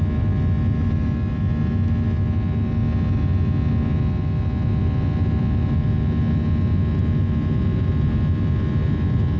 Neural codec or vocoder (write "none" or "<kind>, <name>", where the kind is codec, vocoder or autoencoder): none